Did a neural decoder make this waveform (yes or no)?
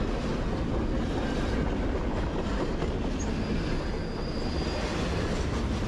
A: no